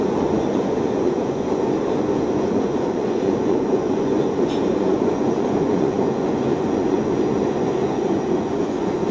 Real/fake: fake